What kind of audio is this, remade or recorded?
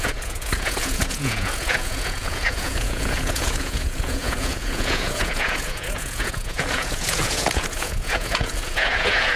remade